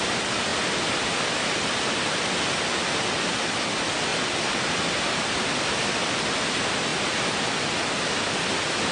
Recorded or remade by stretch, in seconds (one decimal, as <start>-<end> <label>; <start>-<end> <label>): 0.0-8.9 recorded